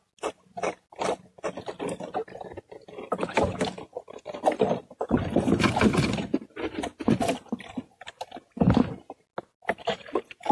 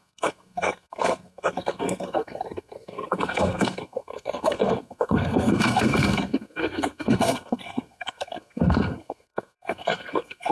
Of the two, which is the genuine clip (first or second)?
first